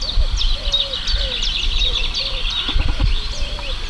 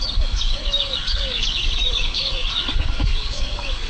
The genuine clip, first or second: first